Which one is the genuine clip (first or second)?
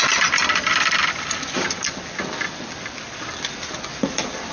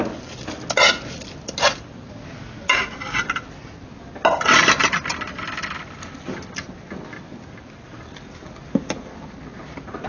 second